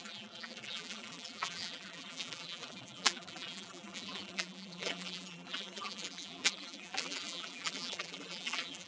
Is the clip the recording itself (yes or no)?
no